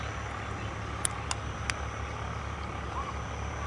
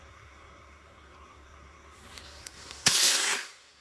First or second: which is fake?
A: second